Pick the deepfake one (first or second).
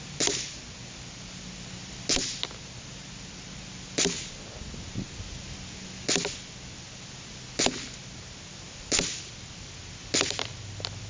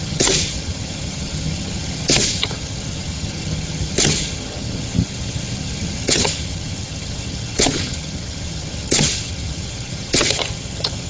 second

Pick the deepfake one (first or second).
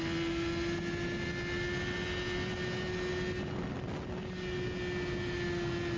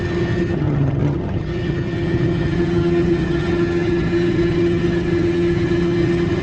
second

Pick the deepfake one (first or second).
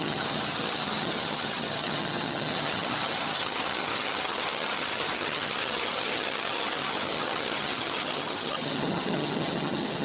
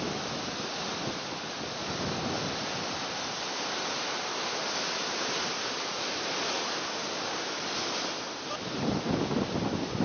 first